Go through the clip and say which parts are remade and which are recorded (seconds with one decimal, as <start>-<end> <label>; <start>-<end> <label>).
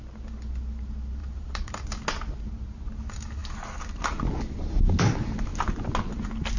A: 0.0-1.2 recorded; 1.2-1.7 remade; 1.7-6.6 recorded